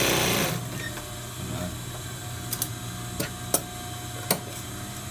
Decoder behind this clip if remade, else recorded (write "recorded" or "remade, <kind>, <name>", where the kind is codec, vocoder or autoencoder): recorded